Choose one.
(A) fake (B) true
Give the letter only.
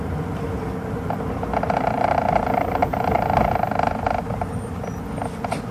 B